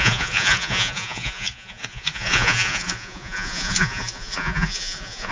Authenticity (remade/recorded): remade